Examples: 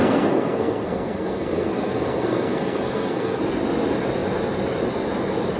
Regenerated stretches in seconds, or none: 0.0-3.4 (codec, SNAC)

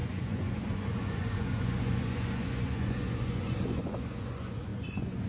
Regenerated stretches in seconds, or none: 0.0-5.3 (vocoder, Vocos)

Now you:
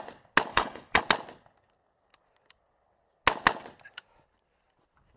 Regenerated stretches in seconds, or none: 0.5-1.0 (codec, HILCodec)

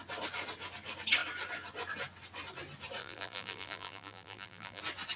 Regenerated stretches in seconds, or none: 3.0-4.8 (vocoder, BigVGAN v2)

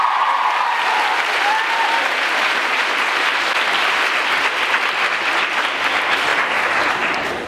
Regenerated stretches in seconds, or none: none

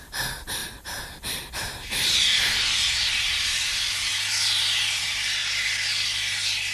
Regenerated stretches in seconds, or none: 0.0-3.7 (vocoder, BigVGAN v2); 4.8-5.4